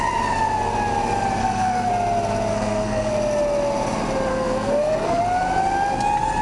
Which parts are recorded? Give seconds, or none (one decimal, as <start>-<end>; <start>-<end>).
0.0-1.4; 1.9-2.5; 3.1-4.3; 5.2-6.4